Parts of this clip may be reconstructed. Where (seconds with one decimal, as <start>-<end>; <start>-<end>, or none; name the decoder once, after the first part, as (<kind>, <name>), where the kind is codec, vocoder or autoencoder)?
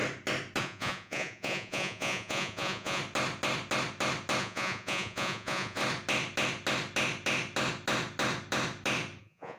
0.6-3.0 (vocoder, Vocos); 4.4-5.8; 9.2-9.6